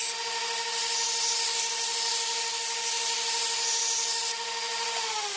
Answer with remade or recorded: recorded